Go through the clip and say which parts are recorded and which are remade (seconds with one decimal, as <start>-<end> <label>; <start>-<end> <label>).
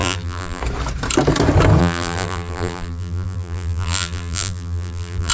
0.0-0.6 remade; 0.6-1.8 recorded; 1.8-5.3 remade